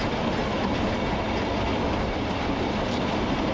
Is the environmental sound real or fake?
real